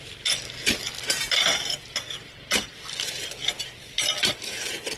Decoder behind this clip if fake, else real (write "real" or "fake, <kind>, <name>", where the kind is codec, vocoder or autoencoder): fake, vocoder, BigVGAN v2